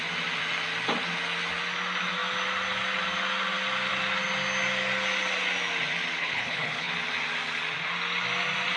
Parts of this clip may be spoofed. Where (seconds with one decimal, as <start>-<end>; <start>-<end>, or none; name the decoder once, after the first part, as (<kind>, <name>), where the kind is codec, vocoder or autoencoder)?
6.2-6.9 (codec, HILCodec)